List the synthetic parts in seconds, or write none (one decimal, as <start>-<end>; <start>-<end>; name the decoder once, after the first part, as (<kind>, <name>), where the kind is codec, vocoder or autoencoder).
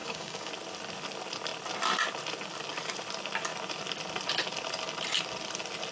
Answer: 0.0-0.5 (codec, DAC)